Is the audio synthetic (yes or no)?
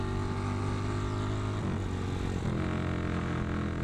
no